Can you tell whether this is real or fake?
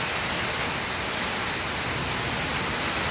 real